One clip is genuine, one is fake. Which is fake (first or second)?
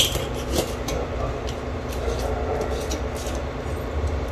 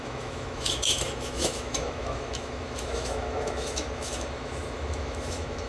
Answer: second